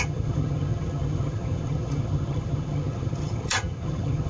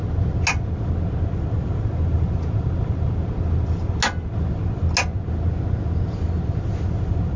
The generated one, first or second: first